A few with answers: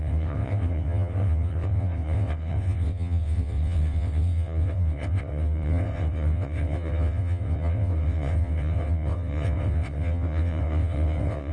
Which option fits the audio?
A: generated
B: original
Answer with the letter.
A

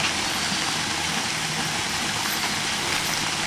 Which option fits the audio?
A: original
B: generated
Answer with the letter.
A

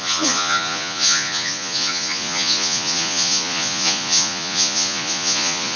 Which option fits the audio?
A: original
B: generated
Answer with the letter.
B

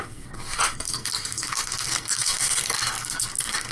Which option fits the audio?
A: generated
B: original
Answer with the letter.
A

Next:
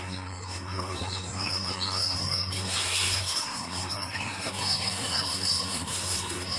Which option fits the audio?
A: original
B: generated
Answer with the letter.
B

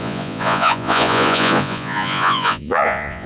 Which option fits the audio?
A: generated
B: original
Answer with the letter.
A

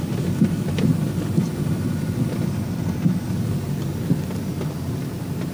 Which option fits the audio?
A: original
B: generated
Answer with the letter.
A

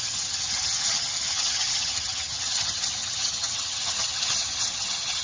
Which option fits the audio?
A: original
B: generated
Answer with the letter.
B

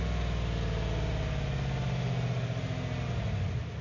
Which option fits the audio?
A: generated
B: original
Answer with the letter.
B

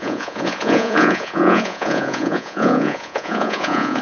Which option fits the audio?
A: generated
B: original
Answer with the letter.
A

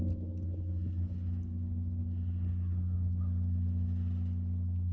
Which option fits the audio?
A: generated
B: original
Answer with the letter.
B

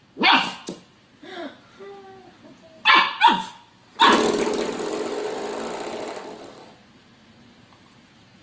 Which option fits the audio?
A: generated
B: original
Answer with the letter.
B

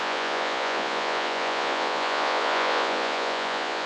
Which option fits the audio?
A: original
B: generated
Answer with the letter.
B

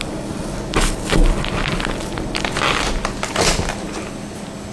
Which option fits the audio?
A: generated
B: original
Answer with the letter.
B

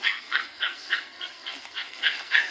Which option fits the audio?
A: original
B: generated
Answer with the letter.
B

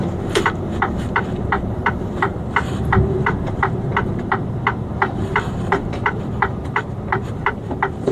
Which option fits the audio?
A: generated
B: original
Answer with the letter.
A